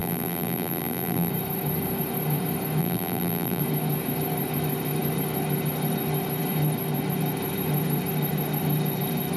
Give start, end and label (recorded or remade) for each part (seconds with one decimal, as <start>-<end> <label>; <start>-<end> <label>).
0.0-1.3 remade; 1.3-2.8 recorded; 2.8-3.6 remade; 3.6-9.4 recorded